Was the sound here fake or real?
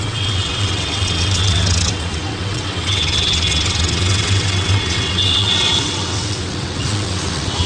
fake